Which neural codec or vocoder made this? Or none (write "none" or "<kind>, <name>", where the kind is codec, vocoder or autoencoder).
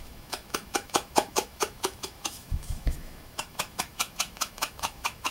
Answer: autoencoder, DAC-VAE